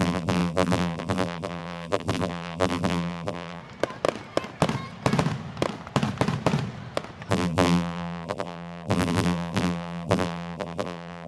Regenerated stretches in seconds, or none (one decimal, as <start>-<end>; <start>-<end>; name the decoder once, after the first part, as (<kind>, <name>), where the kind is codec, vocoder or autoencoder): 0.0-3.6 (vocoder, BigVGAN v2); 7.3-11.3